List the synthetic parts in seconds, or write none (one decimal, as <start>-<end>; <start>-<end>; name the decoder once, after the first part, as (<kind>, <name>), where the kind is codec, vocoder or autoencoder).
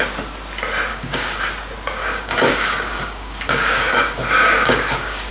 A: 0.9-1.4 (codec, DAC); 2.0-5.3